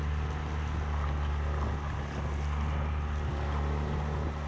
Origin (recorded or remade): recorded